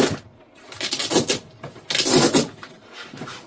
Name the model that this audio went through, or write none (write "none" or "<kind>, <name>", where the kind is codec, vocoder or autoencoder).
none